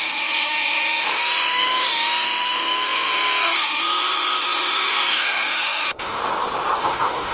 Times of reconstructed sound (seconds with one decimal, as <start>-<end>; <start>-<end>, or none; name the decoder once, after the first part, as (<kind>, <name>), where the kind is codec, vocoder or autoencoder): 0.0-6.2 (autoencoder, DAC-VAE); 6.8-7.3